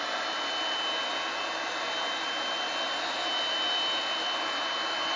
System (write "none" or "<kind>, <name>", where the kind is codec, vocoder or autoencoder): none